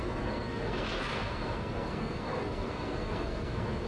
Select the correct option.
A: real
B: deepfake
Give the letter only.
B